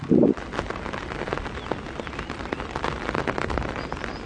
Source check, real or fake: real